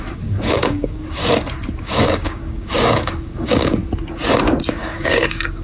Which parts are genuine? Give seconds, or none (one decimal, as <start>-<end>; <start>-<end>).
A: 1.2-1.8; 3.8-4.7